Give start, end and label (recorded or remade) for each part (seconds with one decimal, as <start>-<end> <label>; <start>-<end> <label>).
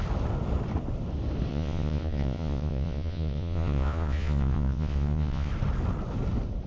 0.0-1.5 recorded; 1.5-5.5 remade; 5.5-6.7 recorded